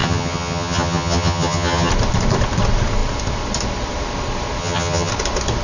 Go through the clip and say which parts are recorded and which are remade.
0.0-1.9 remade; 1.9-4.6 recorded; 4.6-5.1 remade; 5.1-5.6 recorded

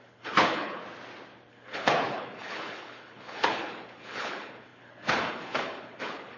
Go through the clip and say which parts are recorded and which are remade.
0.0-0.8 remade; 0.8-1.5 recorded; 1.5-6.4 remade

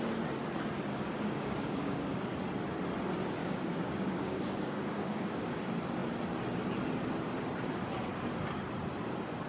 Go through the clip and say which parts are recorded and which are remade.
0.0-0.9 recorded; 0.9-2.3 remade; 2.3-3.4 recorded; 3.4-5.6 remade; 5.6-9.5 recorded

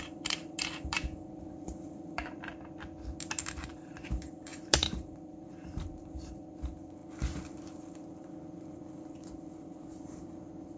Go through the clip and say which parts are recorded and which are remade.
0.0-2.5 remade; 2.5-3.7 recorded; 3.7-10.8 remade

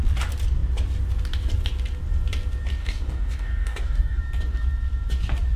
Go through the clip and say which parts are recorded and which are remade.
0.0-2.8 recorded; 2.8-4.2 remade; 4.2-5.6 recorded

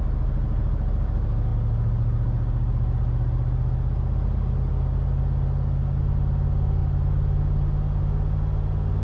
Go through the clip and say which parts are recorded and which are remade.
0.0-9.0 recorded